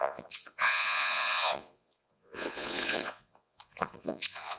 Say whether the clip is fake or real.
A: fake